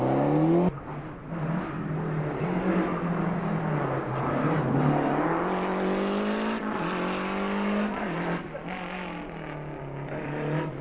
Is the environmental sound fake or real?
real